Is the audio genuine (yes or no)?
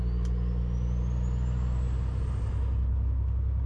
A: yes